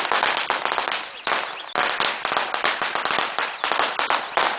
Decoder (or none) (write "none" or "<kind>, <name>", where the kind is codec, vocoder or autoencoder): none